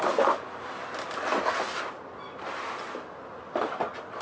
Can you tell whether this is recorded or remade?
recorded